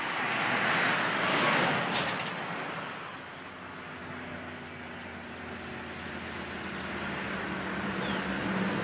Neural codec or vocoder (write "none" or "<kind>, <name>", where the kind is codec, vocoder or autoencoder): none